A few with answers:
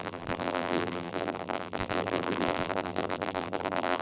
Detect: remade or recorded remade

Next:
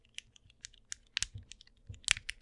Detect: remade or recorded recorded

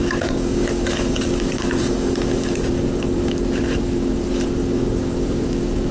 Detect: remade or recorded remade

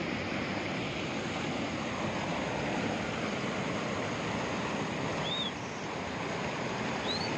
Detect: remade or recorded recorded